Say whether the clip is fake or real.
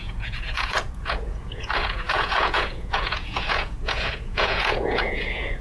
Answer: fake